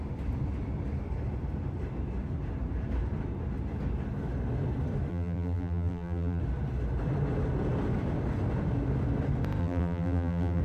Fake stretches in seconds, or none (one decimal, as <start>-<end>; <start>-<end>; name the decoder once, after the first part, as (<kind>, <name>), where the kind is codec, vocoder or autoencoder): 5.1-6.4 (vocoder, BigVGAN v2); 9.6-10.6